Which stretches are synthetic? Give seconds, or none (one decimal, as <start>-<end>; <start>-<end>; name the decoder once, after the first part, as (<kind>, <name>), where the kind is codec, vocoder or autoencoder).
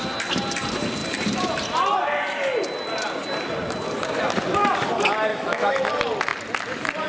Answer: 5.3-5.8 (autoencoder, DAC-VAE)